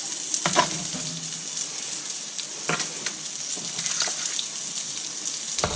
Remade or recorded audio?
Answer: recorded